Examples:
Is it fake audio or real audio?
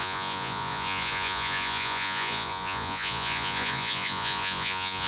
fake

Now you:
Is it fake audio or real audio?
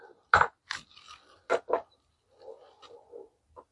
real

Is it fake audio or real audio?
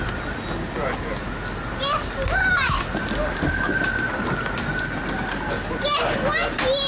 real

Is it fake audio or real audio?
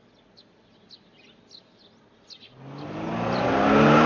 real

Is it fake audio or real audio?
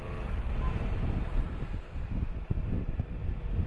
real